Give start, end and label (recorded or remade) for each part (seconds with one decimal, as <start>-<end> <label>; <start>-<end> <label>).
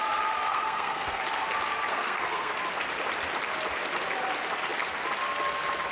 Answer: 0.0-0.5 recorded; 0.5-1.2 remade; 1.2-1.9 recorded; 1.9-2.5 remade; 2.5-5.9 recorded